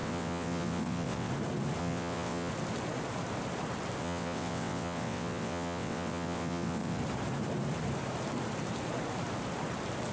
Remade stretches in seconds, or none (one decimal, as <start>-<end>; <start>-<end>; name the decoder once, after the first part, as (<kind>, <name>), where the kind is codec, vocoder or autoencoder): 0.0-1.3 (vocoder, WaveNeXt); 1.8-2.5; 4.0-7.0